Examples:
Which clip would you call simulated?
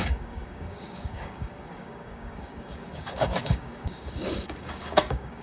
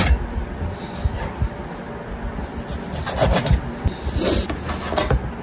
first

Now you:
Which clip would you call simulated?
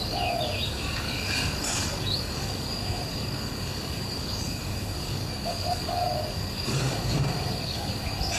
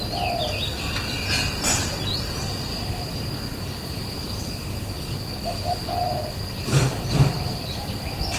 first